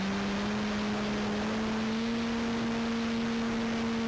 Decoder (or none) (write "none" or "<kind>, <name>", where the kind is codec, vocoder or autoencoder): none